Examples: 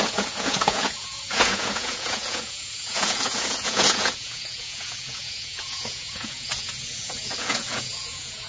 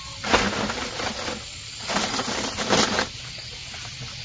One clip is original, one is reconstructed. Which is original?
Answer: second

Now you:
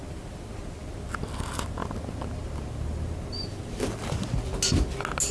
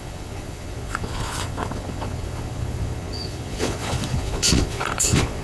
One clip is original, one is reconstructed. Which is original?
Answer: first